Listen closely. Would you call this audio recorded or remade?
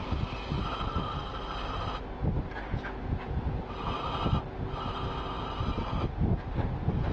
recorded